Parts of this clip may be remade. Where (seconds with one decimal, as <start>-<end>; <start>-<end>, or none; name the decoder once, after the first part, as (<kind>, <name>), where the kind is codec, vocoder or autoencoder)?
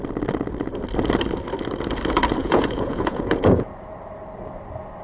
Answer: 2.4-3.7 (vocoder, Vocos)